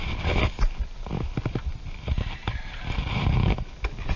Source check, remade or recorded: recorded